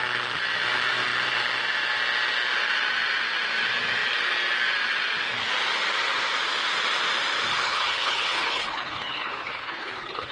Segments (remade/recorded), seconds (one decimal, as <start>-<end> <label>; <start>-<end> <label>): 0.0-7.5 recorded; 7.5-10.3 remade